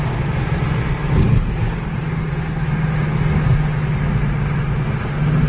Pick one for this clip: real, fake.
real